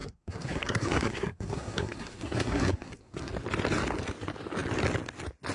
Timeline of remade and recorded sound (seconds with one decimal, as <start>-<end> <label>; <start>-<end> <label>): 0.0-3.3 remade; 3.3-5.5 recorded